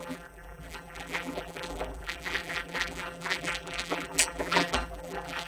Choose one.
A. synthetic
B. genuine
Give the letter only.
A